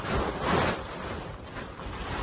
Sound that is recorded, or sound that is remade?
remade